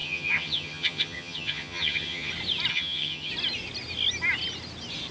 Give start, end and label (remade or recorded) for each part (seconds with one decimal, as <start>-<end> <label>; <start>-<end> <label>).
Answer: 0.0-2.3 remade; 2.3-2.7 recorded; 2.7-3.3 remade; 3.3-5.1 recorded

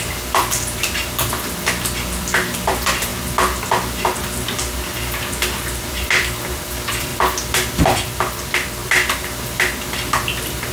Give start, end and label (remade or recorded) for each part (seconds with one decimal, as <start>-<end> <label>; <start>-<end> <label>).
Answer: 0.0-3.1 remade; 3.1-5.8 recorded; 5.8-7.1 remade; 7.1-7.7 recorded; 7.7-8.8 remade; 8.8-10.7 recorded